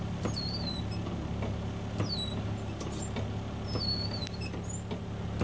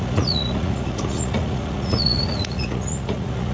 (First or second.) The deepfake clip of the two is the second